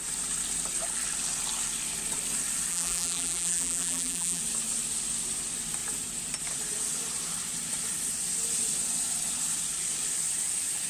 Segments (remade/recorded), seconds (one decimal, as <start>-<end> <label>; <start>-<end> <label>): 0.0-2.7 recorded; 2.7-4.4 remade; 4.4-10.9 recorded